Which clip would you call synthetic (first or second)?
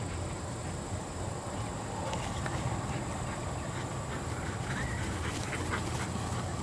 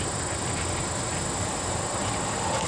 first